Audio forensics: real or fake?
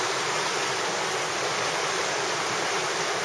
real